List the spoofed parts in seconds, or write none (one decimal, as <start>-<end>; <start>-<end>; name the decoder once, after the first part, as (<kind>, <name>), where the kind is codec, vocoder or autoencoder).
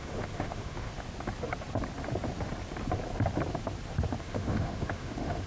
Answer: 0.0-0.9 (autoencoder, DAC-VAE); 4.2-5.5